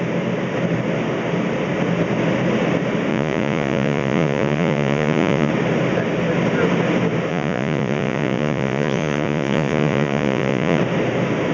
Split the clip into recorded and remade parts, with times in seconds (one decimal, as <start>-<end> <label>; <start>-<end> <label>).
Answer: 0.0-3.1 recorded; 3.1-5.5 remade; 5.5-7.3 recorded; 7.3-10.8 remade; 10.8-11.5 recorded